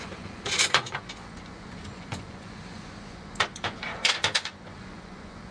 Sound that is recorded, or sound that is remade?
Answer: remade